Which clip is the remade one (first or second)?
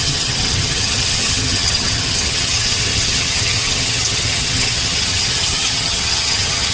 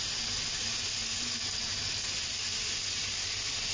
first